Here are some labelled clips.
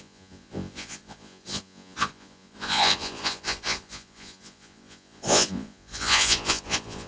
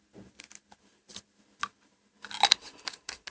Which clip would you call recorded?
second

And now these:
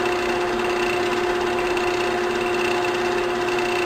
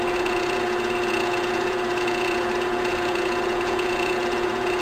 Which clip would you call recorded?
first